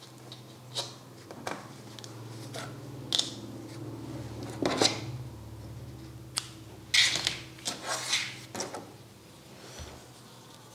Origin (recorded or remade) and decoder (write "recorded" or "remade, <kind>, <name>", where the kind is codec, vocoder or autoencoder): recorded